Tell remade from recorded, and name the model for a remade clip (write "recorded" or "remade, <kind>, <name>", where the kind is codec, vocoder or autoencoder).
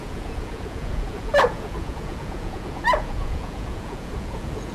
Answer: remade, vocoder, Vocos